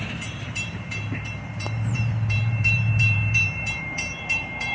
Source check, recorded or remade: remade